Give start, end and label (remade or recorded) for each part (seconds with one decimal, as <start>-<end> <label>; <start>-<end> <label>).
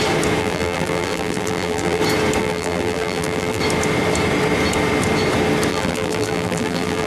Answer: 0.0-0.4 recorded; 0.4-2.0 remade; 2.0-2.4 recorded; 2.4-3.6 remade; 3.6-5.7 recorded; 5.7-7.1 remade